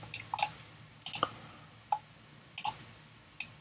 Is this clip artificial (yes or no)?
no